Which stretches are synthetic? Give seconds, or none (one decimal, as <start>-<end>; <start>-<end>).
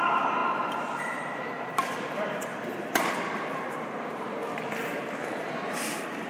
0.0-2.5; 3.4-4.4; 5.3-6.3